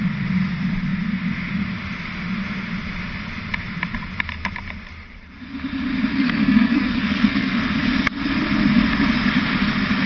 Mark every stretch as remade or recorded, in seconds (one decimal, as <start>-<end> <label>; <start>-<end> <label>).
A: 0.0-6.1 recorded; 6.1-7.6 remade; 7.6-10.1 recorded